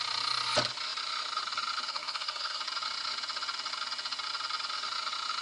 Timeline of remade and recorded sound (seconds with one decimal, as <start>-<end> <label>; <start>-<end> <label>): 0.0-1.9 recorded; 1.9-2.6 remade; 2.6-5.4 recorded